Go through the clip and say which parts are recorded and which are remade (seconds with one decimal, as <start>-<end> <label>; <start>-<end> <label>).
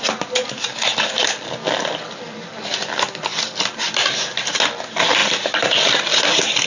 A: 0.0-6.7 recorded